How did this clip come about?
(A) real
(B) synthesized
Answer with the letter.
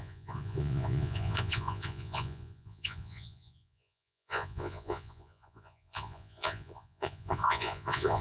B